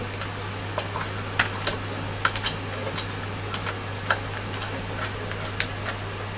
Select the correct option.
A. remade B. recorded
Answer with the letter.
B